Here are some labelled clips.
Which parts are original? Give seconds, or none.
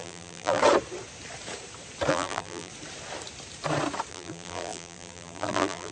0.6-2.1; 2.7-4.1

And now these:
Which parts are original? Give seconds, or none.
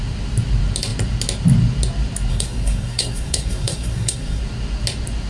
0.0-2.3; 4.4-5.3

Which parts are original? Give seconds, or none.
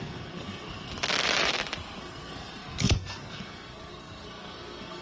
0.9-2.0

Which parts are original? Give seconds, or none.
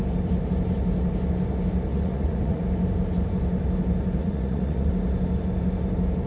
0.0-1.9; 2.6-4.2; 4.9-6.3